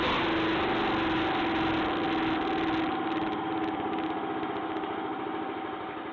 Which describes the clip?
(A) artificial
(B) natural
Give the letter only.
B